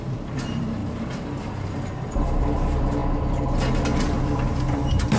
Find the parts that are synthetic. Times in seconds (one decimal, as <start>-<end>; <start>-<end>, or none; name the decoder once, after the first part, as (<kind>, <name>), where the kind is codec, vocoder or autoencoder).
0.0-3.0 (vocoder, BigVGAN v2); 4.2-5.2